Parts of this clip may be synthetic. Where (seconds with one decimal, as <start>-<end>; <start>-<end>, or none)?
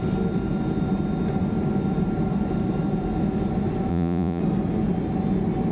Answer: 3.9-4.4